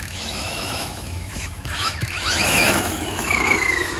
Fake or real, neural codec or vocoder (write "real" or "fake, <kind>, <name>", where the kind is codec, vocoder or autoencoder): fake, autoencoder, DAC-VAE